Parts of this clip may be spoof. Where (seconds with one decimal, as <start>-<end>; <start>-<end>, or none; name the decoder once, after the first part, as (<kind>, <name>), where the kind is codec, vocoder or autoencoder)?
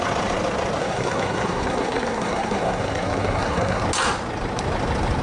0.8-3.8 (codec, SNAC)